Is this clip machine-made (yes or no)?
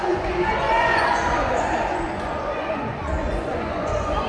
yes